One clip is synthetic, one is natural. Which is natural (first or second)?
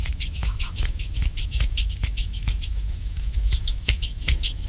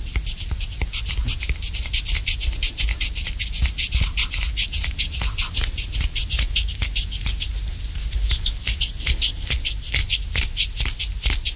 second